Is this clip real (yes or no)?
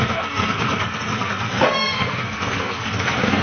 no